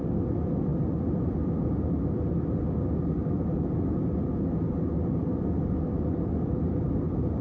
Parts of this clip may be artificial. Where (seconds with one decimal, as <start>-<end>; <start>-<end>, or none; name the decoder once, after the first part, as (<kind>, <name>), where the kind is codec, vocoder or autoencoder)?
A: none

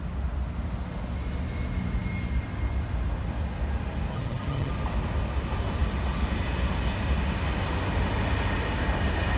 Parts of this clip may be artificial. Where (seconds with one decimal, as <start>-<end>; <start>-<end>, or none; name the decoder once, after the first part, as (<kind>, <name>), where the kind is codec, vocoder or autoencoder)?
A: 4.1-4.7 (vocoder, HiFi-GAN)

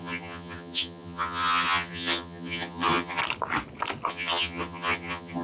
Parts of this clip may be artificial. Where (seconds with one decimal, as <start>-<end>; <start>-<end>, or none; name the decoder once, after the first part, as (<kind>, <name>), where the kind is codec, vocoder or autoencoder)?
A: 0.0-3.2 (vocoder, HiFi-GAN); 4.1-5.4

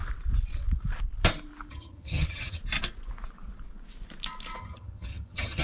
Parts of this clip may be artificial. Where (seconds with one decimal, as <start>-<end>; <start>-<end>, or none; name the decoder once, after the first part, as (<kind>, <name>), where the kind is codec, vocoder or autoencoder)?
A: 1.7-2.6 (vocoder, HiFi-GAN); 4.6-5.6

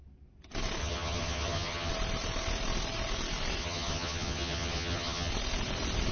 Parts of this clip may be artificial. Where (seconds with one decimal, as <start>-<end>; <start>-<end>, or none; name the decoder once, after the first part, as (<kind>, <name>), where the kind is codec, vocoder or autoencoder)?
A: 0.8-1.9 (vocoder, HiFi-GAN); 3.6-5.3

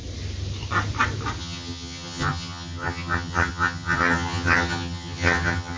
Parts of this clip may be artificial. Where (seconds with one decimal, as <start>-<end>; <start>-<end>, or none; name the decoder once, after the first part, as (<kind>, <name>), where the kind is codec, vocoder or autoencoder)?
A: 1.4-5.8 (vocoder, HiFi-GAN)

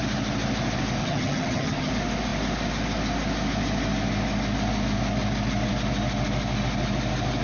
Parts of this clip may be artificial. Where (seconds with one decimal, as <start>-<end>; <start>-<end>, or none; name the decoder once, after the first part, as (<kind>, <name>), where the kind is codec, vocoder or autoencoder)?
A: 1.0-1.9 (vocoder, HiFi-GAN)